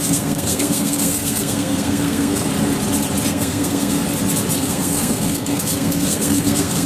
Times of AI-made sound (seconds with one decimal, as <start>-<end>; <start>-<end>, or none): 0.0-2.5; 3.3-4.0; 4.6-6.9